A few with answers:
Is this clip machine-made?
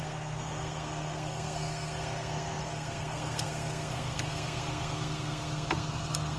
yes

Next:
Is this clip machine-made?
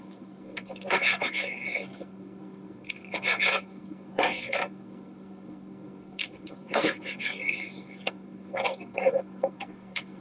yes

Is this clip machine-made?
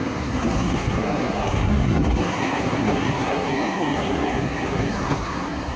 yes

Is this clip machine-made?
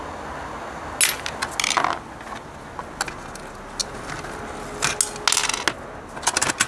no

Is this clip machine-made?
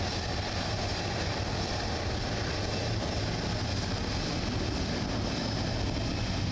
no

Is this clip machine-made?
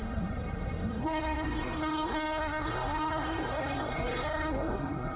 yes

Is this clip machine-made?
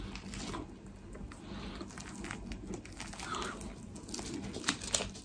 no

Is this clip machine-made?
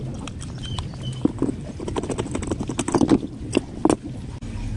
no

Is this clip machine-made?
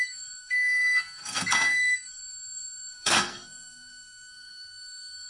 yes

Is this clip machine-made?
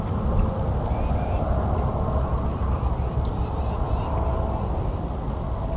no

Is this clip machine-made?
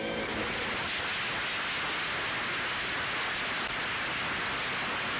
no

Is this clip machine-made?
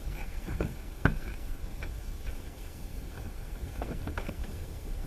yes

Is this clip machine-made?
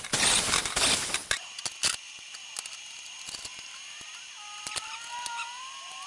no